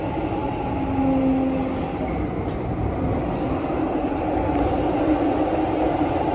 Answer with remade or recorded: recorded